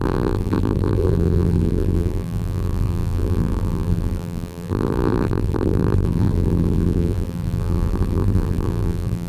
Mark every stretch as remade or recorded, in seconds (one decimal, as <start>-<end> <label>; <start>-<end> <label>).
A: 0.0-9.3 remade